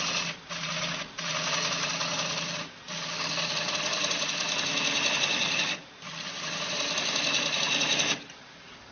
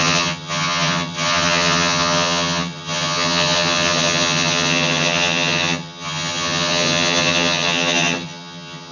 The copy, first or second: second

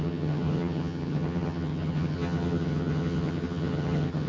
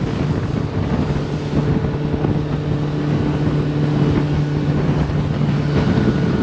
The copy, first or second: first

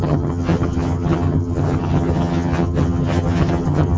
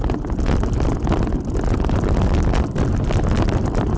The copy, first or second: first